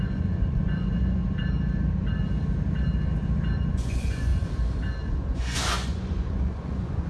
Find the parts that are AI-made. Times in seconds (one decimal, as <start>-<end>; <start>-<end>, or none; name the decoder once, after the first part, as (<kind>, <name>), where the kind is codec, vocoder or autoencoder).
0.0-1.2 (vocoder, Vocos); 3.7-4.3; 5.1-7.1

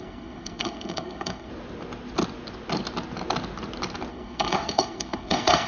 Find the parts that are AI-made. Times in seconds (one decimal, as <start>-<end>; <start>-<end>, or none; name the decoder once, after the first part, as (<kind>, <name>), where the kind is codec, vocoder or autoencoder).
0.0-1.5 (codec, SNAC); 4.1-5.7

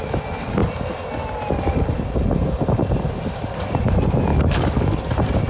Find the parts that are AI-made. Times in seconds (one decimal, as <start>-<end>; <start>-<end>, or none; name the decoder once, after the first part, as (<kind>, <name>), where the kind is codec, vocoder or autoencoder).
4.3-5.0 (codec, DAC)

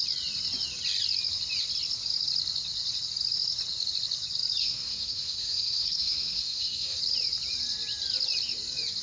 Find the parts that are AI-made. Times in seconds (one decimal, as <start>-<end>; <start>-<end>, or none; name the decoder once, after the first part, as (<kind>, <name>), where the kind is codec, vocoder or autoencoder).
4.6-7.0 (codec, SNAC)

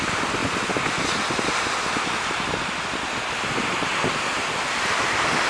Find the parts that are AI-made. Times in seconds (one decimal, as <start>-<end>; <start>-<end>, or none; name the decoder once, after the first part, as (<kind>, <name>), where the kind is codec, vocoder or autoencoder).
none

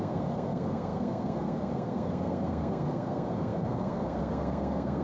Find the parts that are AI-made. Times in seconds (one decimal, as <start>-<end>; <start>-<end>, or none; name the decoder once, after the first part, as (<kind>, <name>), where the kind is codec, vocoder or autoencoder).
0.0-5.0 (codec, SNAC)

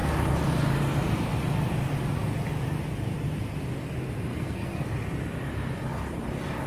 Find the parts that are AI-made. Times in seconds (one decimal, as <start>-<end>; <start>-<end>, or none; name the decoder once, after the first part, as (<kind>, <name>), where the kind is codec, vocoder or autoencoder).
4.3-4.9 (codec, SNAC)

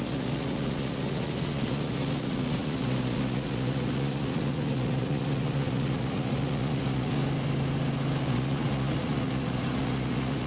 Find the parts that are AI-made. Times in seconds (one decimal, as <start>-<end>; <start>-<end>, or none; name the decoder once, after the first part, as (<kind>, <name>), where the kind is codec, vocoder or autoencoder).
0.0-7.2 (vocoder, Vocos); 8.2-10.5